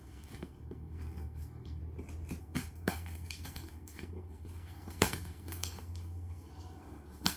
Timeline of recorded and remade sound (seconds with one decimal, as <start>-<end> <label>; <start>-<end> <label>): 0.0-1.8 remade; 1.8-2.4 recorded; 2.4-7.4 remade